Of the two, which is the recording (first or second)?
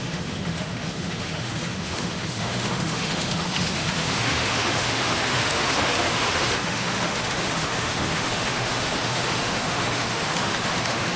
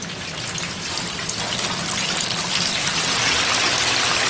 second